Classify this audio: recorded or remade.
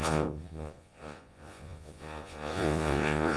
remade